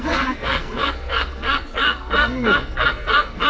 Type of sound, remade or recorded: remade